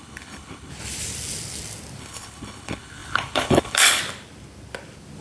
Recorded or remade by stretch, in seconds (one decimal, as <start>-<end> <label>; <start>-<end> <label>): 0.0-0.7 remade; 0.7-2.0 recorded; 2.0-4.0 remade; 4.0-5.2 recorded